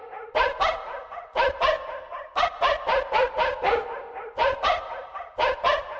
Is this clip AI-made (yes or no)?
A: no